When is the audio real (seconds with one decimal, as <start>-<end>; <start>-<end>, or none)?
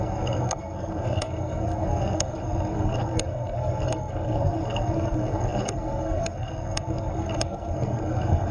none